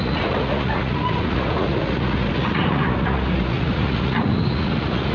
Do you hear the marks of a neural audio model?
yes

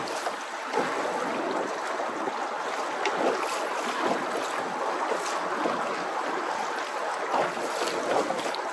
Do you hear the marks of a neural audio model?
no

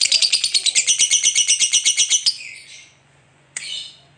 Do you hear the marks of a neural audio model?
yes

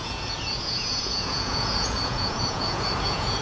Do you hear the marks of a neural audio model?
yes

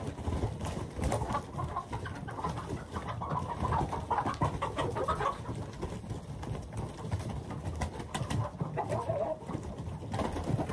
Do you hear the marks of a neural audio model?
no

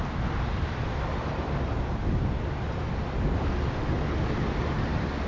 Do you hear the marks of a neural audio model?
no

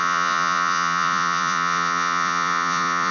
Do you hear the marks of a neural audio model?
yes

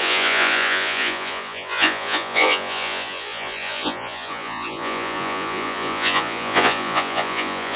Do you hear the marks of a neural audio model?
yes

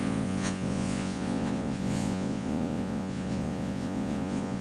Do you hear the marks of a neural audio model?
yes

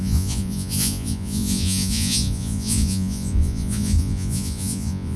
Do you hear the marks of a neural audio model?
yes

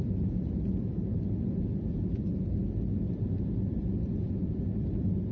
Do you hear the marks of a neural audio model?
no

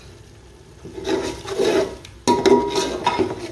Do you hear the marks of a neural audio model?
no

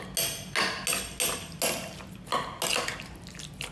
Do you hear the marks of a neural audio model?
no